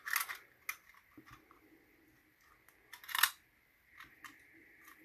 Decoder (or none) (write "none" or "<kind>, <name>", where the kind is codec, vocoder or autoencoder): none